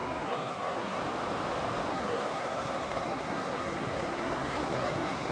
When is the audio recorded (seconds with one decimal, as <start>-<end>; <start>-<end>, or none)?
1.0-1.9